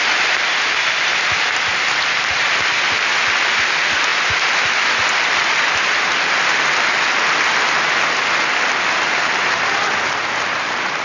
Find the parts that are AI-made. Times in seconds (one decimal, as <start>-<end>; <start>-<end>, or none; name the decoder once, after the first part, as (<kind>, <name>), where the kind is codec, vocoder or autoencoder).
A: none